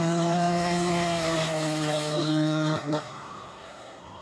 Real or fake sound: fake